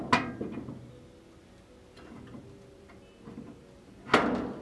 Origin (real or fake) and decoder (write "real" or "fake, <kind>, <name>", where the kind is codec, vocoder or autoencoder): real